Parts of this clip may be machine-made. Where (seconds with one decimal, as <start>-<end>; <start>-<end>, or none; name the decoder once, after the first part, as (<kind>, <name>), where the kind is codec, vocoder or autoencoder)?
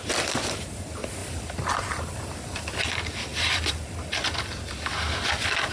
1.2-2.8 (vocoder, BigVGAN v2); 3.3-4.6